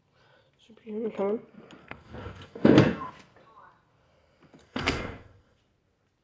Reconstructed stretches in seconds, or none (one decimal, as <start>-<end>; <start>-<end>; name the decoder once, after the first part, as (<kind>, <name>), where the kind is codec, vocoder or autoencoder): 1.8-3.1 (codec, SNAC); 4.6-5.6